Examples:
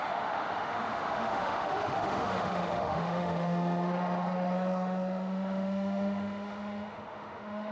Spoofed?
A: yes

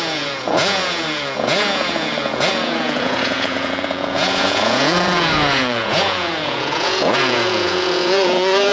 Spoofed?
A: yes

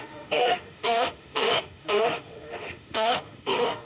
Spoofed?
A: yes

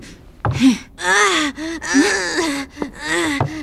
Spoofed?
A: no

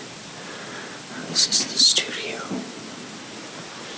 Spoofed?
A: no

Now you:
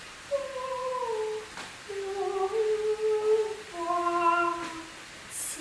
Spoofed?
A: no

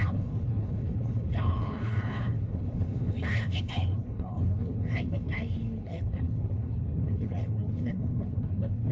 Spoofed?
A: yes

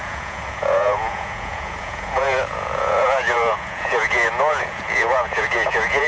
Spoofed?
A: yes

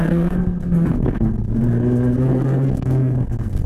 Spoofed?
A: yes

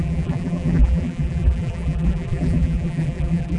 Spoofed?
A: yes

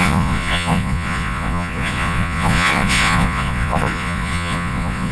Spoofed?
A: yes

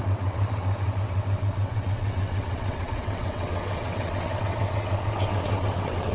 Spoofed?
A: yes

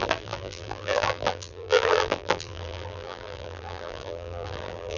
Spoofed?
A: yes